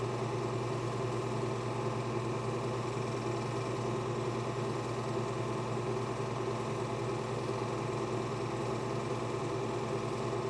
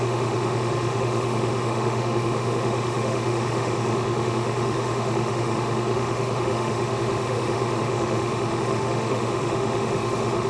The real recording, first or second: first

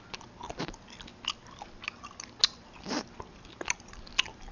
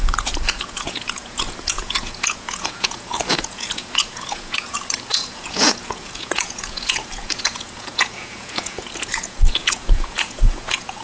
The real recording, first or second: first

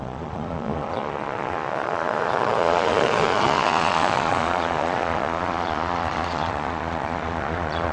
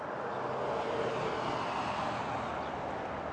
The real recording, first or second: second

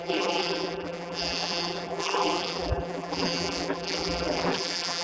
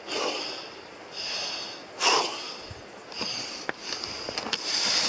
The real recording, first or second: second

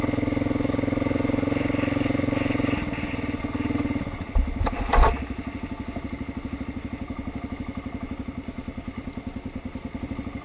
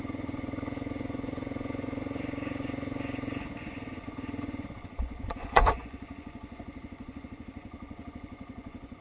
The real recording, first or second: first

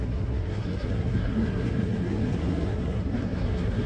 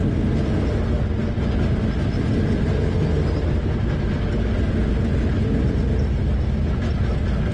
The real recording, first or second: second